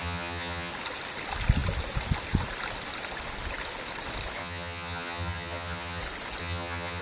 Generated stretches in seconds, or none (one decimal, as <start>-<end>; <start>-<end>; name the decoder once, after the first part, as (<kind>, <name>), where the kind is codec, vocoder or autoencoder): 0.0-0.7 (vocoder, HiFi-GAN); 4.4-6.0; 6.4-7.0